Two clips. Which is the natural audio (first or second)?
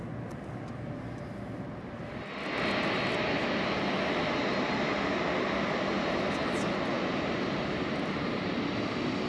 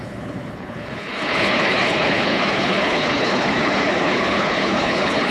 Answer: first